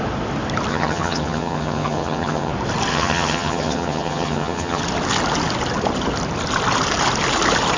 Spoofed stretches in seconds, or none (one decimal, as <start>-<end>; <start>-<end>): 0.7-2.5; 2.9-4.8